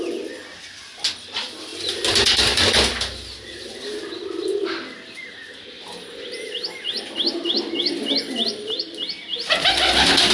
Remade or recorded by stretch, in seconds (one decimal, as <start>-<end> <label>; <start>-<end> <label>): 0.0-10.3 recorded